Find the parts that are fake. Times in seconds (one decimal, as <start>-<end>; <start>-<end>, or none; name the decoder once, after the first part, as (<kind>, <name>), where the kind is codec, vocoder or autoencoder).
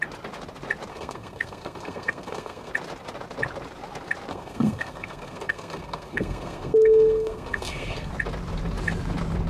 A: 0.9-2.7 (codec, SNAC); 4.3-8.1